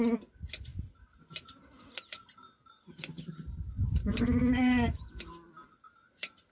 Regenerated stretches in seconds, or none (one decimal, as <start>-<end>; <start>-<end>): 4.4-5.0